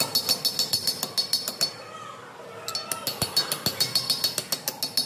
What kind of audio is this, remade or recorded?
recorded